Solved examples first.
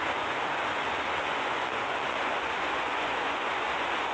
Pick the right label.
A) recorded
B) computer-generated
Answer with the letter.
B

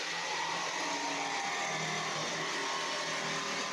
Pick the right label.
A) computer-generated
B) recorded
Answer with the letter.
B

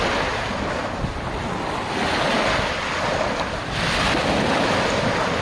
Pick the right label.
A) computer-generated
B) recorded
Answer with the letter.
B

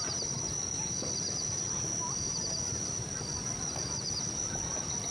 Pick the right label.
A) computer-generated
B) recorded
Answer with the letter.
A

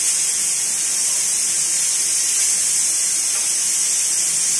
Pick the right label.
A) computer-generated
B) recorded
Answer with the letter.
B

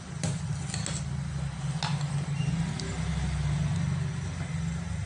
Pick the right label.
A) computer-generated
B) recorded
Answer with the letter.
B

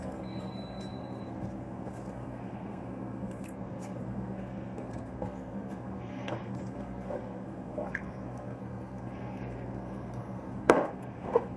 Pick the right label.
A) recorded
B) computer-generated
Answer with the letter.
B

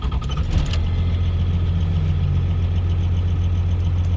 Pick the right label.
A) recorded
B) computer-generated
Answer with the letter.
A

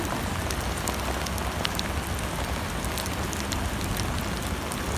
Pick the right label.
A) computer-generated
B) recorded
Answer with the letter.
B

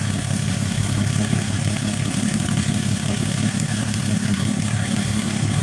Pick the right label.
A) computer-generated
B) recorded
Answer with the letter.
A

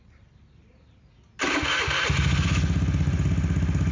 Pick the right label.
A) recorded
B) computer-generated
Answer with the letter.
A